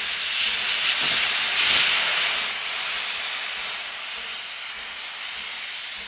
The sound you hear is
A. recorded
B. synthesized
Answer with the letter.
A